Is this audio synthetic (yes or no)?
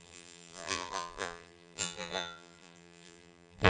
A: yes